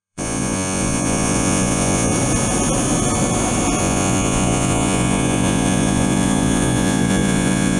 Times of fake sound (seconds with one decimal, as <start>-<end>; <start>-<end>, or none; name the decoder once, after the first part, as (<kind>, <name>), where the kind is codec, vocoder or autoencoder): 0.0-2.1 (vocoder, Vocos); 3.8-7.8